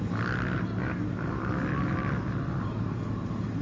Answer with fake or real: real